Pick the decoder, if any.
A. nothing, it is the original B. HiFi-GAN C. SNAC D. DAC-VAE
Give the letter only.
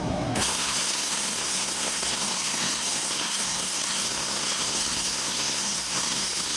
C